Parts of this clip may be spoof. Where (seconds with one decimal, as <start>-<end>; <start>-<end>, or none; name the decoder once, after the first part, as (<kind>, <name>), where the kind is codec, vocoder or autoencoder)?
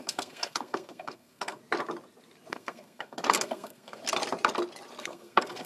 0.0-1.6 (codec, SNAC); 2.5-4.0; 5.0-5.7